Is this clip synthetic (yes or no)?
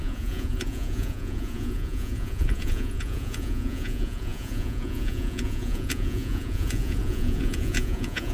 yes